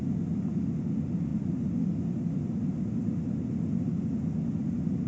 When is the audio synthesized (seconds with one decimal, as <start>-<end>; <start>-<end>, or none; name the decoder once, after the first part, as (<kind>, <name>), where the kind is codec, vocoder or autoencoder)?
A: none